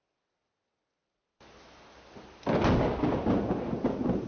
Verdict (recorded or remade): recorded